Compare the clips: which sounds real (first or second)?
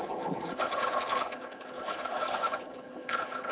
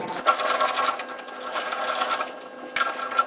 second